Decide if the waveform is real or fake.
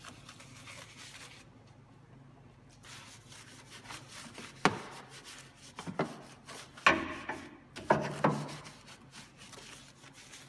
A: real